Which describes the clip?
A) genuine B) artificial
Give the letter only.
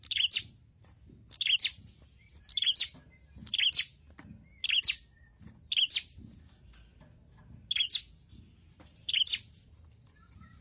A